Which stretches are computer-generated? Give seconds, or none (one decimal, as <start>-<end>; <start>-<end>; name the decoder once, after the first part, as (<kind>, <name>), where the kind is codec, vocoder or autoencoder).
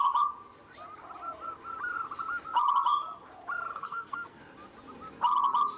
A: 3.7-4.4 (codec, SNAC)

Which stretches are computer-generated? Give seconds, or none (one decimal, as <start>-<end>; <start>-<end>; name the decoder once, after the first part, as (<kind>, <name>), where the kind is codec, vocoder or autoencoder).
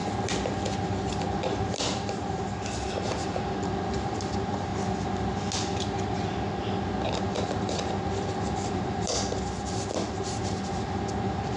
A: 1.1-4.7 (vocoder, BigVGAN v2); 7.4-11.6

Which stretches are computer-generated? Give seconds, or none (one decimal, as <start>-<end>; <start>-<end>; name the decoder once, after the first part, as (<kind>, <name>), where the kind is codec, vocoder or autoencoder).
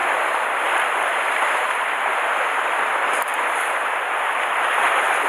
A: none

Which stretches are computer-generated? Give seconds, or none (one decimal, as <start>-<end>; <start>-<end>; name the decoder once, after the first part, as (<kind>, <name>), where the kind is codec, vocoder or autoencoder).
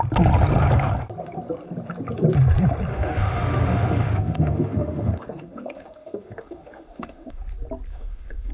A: 2.9-7.4 (autoencoder, DAC-VAE); 7.9-8.5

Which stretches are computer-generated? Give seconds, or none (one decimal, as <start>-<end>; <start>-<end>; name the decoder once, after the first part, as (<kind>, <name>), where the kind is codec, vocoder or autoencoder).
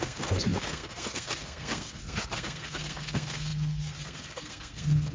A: 0.0-5.1 (codec, SNAC)